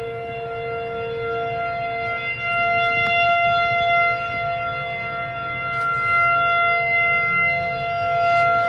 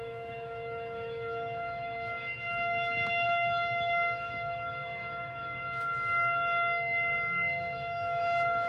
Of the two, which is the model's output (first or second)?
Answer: second